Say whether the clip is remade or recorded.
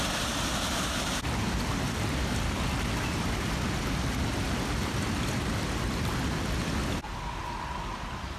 recorded